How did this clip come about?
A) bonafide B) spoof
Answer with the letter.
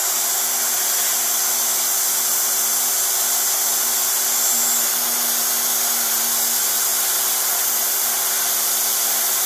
A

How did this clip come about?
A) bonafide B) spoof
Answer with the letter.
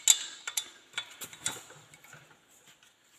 A